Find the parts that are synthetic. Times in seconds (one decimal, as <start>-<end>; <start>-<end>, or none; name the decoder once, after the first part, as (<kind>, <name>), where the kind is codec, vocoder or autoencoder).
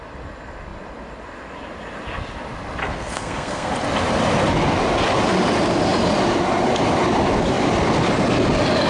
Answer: 2.8-3.7 (codec, SNAC)